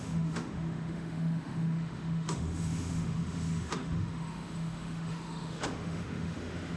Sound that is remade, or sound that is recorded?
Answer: remade